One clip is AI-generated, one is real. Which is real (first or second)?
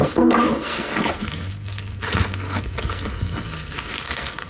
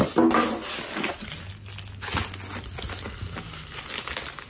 second